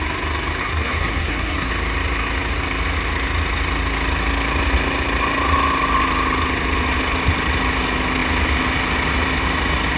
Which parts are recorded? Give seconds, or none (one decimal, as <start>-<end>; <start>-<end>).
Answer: 0.0-0.6; 1.7-10.0